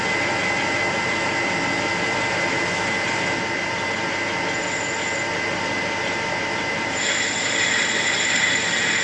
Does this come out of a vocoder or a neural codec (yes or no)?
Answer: no